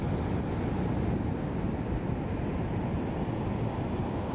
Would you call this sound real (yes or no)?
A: yes